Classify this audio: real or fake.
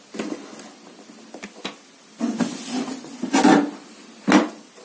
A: real